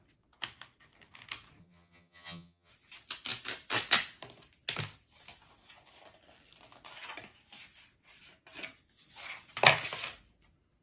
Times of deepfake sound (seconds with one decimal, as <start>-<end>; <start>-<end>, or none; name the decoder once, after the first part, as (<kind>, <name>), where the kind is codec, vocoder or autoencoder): 1.6-2.7 (vocoder, HiFi-GAN)